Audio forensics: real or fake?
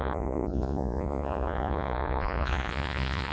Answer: fake